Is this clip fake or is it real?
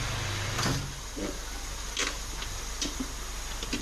real